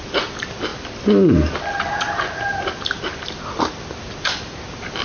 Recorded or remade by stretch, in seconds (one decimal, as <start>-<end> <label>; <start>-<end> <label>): 0.0-5.0 recorded